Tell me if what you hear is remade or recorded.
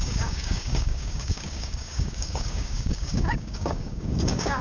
remade